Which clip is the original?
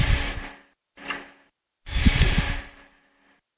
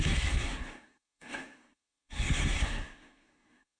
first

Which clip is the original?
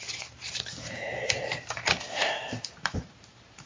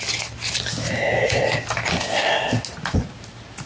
second